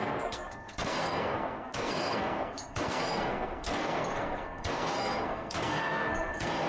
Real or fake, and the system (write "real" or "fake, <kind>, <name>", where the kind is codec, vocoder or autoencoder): fake, codec, SNAC